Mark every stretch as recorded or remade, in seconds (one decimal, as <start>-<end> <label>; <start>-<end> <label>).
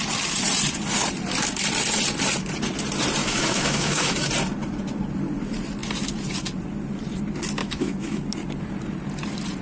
0.0-3.2 recorded; 3.2-4.3 remade; 4.3-7.6 recorded; 7.6-8.2 remade; 8.2-9.6 recorded